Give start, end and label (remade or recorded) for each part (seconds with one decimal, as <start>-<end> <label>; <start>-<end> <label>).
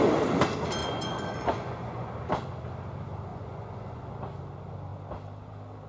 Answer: 0.0-0.8 recorded; 0.8-2.1 remade; 2.1-3.3 recorded; 3.3-4.1 remade; 4.1-5.9 recorded